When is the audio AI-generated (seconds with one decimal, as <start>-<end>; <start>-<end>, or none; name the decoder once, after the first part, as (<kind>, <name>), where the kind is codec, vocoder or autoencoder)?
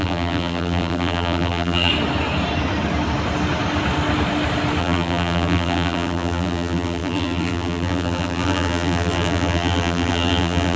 0.0-1.9 (vocoder, BigVGAN v2); 4.8-10.8